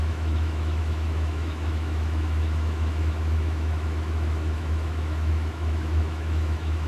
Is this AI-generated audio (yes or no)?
yes